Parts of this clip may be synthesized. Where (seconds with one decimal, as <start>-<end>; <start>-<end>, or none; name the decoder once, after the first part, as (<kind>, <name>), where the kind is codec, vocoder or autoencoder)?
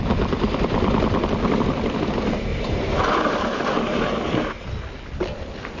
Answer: 2.5-3.0 (vocoder, BigVGAN v2)